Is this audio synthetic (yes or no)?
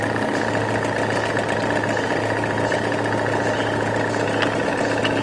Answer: no